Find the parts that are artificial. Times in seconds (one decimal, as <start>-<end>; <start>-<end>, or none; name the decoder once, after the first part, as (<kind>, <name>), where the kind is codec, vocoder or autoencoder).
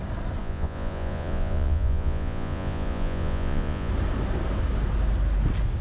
0.4-3.9 (vocoder, Vocos)